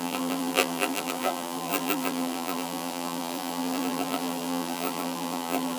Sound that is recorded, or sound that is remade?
remade